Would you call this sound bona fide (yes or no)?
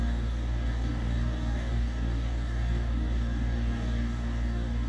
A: no